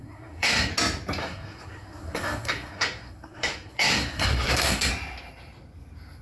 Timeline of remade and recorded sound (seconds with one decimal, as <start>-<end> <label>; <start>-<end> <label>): 0.0-0.7 remade; 0.7-1.2 recorded; 1.2-4.9 remade; 4.9-6.2 recorded

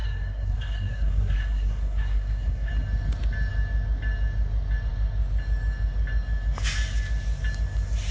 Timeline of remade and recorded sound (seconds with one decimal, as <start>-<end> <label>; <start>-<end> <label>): 0.0-2.7 remade; 2.7-8.1 recorded

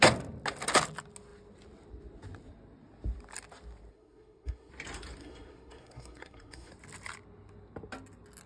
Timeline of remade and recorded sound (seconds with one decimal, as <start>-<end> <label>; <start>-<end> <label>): 0.0-3.9 recorded; 3.9-4.7 remade; 4.7-5.2 recorded; 5.2-6.7 remade; 6.7-8.5 recorded

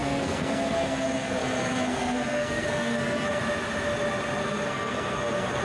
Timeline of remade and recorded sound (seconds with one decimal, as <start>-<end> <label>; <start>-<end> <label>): 0.0-3.4 remade; 3.4-4.4 recorded; 4.4-5.6 remade

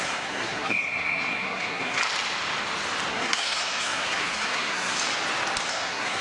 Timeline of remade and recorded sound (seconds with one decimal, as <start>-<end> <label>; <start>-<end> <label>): 0.0-2.0 remade; 2.0-3.1 recorded; 3.1-5.0 remade; 5.0-5.7 recorded; 5.7-6.2 remade

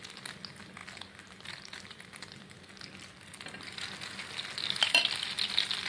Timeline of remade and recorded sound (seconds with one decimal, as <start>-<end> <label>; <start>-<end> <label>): 0.0-5.9 recorded